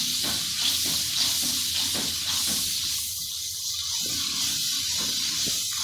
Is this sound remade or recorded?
recorded